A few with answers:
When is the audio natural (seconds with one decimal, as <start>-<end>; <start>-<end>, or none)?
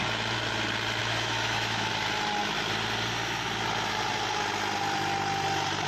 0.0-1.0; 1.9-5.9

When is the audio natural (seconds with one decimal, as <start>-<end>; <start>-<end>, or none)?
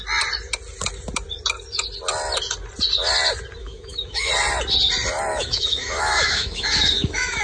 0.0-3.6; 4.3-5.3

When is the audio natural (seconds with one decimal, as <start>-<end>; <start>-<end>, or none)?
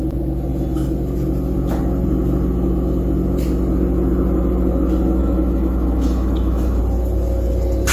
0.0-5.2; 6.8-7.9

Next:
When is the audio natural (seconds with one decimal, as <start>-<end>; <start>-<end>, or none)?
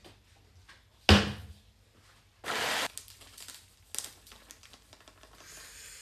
0.0-6.0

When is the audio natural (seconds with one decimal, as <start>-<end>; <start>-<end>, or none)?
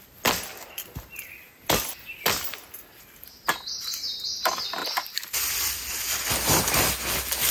0.0-7.5